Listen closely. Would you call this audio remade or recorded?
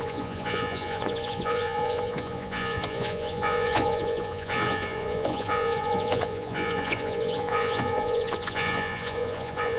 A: remade